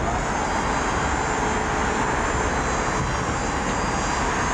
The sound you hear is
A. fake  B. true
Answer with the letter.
B